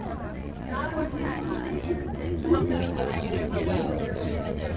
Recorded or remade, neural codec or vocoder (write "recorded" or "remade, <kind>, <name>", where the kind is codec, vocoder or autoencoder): remade, vocoder, Vocos